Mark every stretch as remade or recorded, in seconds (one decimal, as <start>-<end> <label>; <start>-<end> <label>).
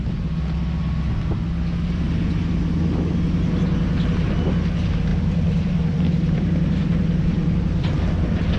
0.0-5.1 recorded; 5.1-8.6 remade